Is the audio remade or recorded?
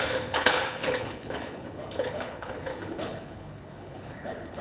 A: remade